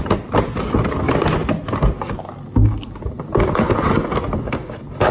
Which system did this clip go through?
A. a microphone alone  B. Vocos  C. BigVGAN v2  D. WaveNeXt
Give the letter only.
A